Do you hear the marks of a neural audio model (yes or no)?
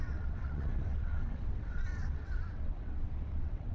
yes